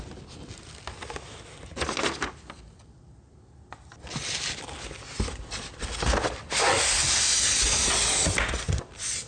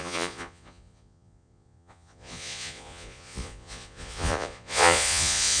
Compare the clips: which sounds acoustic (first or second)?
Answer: first